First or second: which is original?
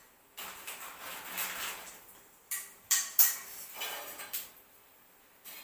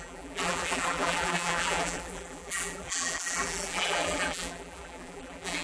first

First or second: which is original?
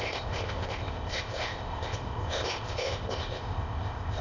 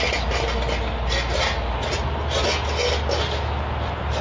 second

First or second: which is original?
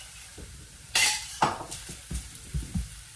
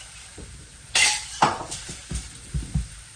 second